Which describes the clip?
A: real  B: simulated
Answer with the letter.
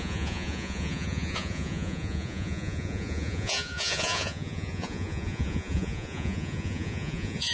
B